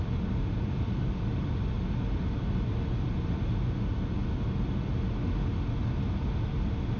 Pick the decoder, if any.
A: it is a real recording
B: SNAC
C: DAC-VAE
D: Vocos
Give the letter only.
A